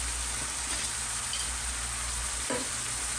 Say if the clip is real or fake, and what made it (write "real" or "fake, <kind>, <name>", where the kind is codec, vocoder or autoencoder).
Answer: real